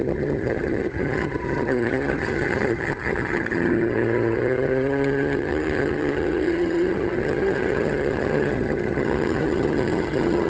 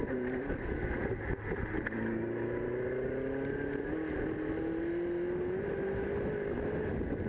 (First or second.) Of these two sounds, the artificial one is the first